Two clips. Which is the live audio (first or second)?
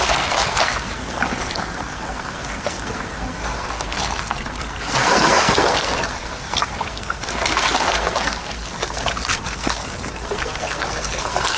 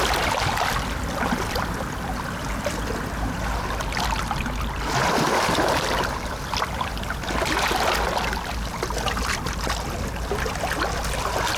second